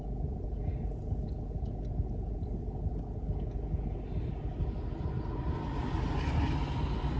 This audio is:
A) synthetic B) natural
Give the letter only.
B